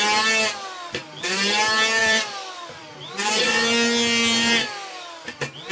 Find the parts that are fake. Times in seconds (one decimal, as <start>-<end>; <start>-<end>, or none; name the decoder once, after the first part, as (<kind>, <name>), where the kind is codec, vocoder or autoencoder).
2.0-3.4 (vocoder, BigVGAN v2)